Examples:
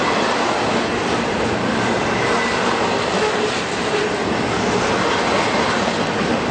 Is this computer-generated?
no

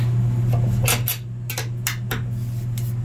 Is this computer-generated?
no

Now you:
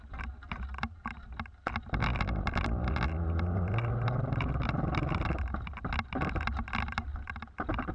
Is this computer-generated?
no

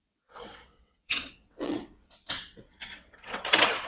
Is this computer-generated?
yes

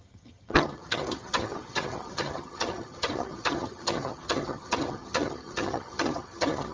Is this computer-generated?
yes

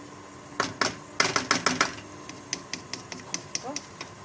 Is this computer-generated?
no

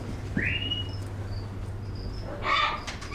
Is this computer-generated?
no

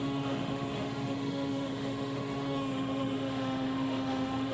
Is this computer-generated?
yes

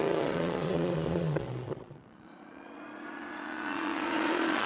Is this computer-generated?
yes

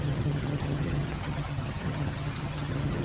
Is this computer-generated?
yes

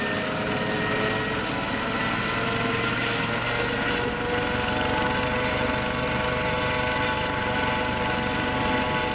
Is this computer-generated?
no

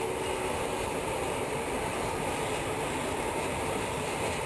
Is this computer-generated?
no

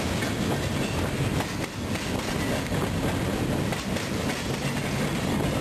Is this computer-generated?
no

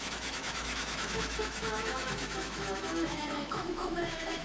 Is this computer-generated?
yes